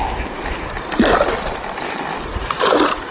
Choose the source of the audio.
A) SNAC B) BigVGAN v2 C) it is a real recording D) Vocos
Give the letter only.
C